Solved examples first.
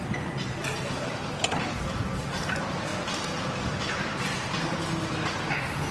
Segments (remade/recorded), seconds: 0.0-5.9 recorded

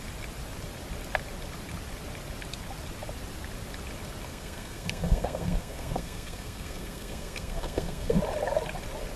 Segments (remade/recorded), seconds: 0.0-4.3 recorded; 4.3-8.2 remade; 8.2-9.2 recorded

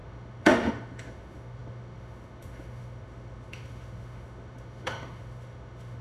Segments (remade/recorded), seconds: 0.0-6.0 remade

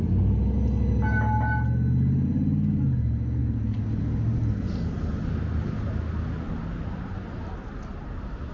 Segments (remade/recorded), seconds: 0.0-8.5 recorded